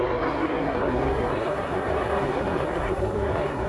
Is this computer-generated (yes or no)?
yes